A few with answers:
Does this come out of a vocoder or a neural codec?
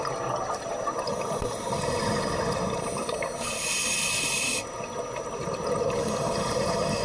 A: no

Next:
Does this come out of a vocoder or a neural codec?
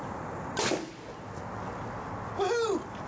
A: no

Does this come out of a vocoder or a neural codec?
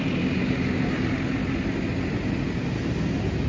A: no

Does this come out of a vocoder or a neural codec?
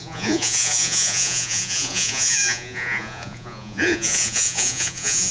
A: yes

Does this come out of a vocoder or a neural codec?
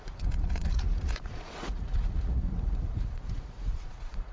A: yes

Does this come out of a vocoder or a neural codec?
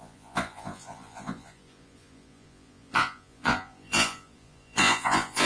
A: yes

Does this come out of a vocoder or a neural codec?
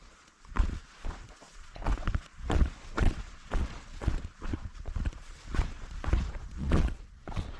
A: yes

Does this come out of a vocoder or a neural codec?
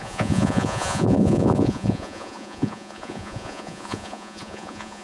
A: yes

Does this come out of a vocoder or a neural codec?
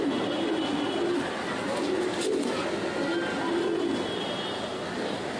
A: no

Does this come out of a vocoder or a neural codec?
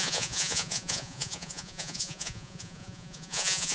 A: yes